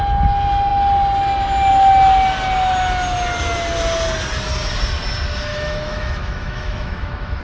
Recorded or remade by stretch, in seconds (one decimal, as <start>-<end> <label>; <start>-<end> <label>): 0.0-5.5 recorded; 5.5-7.4 remade